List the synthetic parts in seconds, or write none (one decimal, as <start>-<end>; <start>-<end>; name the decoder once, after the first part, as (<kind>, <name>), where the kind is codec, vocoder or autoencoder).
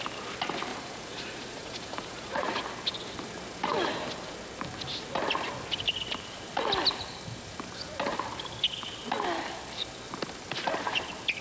0.7-2.6 (vocoder, Vocos)